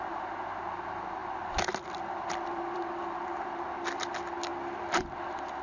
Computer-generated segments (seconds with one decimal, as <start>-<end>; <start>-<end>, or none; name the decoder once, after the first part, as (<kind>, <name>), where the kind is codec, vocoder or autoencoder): none